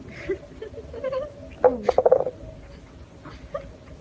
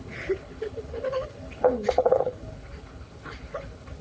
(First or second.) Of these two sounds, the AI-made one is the second